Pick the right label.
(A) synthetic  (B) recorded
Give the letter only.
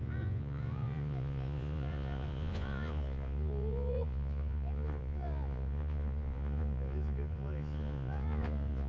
A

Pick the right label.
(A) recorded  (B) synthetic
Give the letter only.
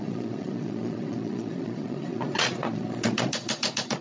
B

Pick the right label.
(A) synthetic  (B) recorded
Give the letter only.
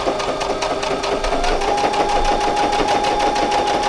B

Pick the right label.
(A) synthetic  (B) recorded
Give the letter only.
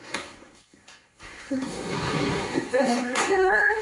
A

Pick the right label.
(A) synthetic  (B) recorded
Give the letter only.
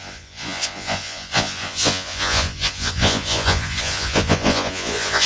A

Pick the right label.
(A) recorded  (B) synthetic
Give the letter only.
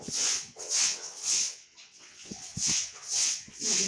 B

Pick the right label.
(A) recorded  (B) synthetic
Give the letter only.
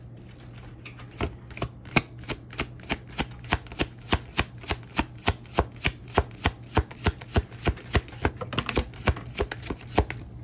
A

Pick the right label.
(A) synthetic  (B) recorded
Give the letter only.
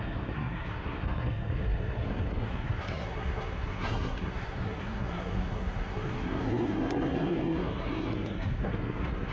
A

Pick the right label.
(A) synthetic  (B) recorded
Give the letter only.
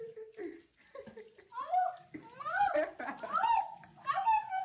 B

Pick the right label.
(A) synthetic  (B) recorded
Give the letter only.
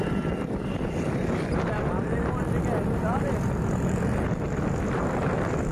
B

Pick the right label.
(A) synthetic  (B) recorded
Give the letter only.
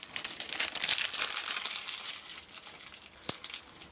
B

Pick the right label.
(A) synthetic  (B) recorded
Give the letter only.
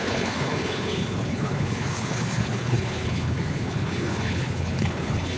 A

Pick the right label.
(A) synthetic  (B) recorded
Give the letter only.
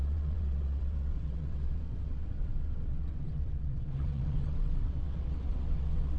A